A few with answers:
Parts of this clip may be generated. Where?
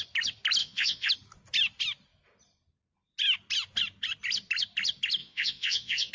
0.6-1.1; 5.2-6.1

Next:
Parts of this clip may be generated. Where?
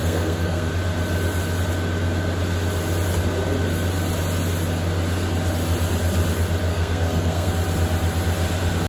0.0-0.7; 6.7-7.5